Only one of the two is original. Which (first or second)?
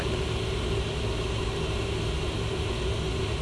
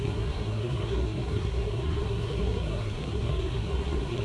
first